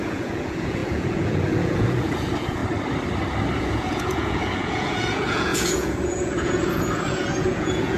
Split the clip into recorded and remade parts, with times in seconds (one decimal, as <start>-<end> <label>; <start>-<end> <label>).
0.0-2.6 remade; 2.6-3.6 recorded; 3.6-8.0 remade